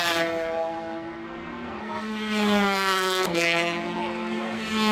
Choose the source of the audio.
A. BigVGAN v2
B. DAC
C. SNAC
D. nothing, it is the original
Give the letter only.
C